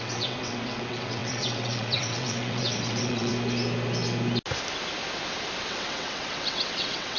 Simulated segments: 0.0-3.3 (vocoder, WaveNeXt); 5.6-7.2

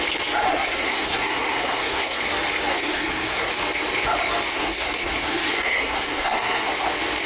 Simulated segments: 0.5-2.2 (codec, SNAC); 2.7-3.5; 4.5-6.7

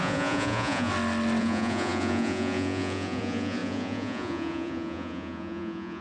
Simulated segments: 0.0-0.9 (vocoder, Vocos); 1.4-6.0

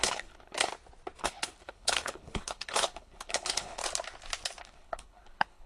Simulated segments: 0.0-0.7 (codec, HILCodec); 1.2-3.8; 4.6-5.7